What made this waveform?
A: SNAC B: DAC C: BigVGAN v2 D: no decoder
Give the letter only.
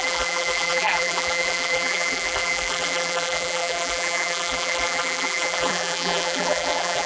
C